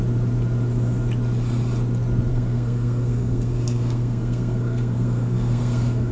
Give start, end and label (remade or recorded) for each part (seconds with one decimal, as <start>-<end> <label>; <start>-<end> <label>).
0.0-2.3 recorded; 2.3-6.1 remade